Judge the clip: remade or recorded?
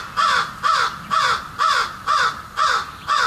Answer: recorded